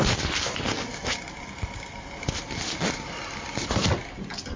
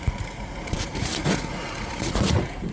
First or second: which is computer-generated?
second